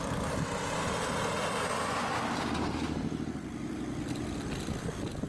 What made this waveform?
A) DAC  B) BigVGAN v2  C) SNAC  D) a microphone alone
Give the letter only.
D